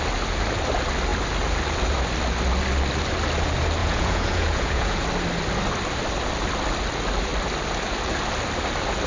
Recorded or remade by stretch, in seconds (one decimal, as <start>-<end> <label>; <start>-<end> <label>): 0.0-3.8 recorded; 3.8-5.0 remade; 5.0-9.1 recorded